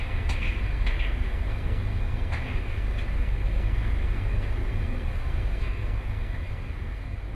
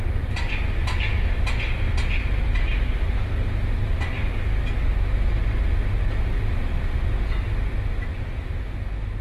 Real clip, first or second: second